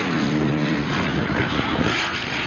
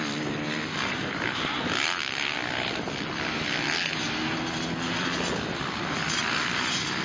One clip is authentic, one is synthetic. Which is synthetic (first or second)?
first